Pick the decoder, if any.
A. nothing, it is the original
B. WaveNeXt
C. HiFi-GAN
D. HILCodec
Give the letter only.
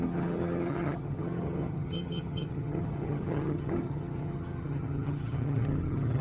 C